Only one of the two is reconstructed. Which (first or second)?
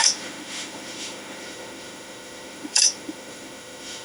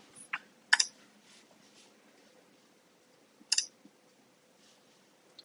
first